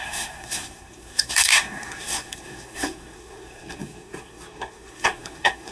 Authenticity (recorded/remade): remade